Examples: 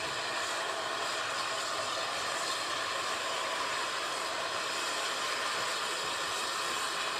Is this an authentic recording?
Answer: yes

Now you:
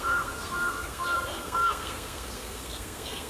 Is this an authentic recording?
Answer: no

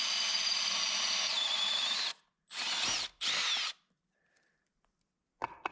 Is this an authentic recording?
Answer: yes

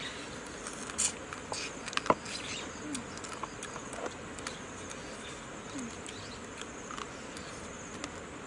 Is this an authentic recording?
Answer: yes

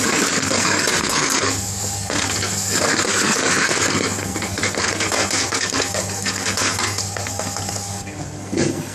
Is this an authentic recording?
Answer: no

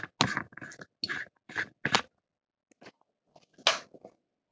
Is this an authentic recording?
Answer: yes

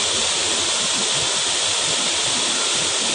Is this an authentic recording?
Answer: yes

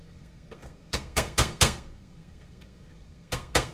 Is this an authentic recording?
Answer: no